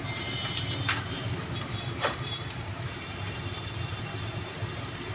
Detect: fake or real fake